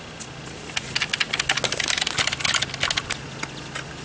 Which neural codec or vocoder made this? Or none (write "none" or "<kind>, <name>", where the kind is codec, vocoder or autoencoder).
none